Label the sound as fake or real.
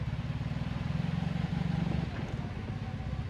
real